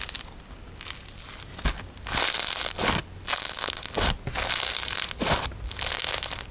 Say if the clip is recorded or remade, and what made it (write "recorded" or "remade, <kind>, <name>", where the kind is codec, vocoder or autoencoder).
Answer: recorded